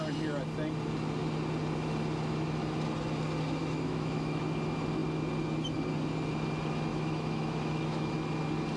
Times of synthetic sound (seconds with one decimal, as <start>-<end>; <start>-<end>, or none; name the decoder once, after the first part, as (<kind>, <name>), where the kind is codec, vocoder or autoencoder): 3.6-4.4 (autoencoder, DAC-VAE); 6.9-8.1